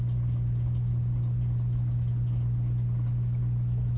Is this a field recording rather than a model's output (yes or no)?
yes